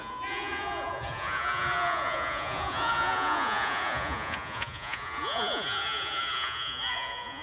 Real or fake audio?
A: fake